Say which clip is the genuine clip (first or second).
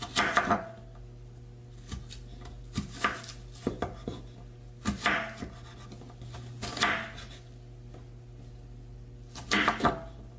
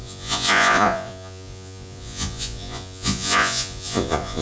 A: first